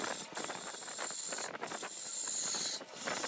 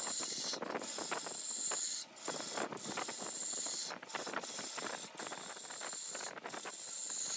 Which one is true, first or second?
second